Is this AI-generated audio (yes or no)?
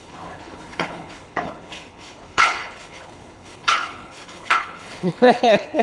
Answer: yes